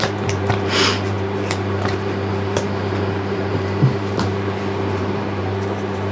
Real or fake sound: fake